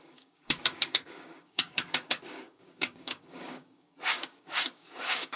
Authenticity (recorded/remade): remade